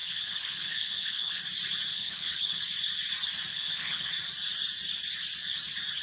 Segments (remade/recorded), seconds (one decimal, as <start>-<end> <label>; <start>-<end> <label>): 0.0-1.4 remade; 1.4-1.9 recorded; 1.9-2.6 remade; 2.6-3.5 recorded; 3.5-4.1 remade; 4.1-6.0 recorded